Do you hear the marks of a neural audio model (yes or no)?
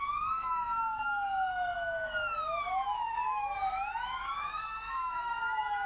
yes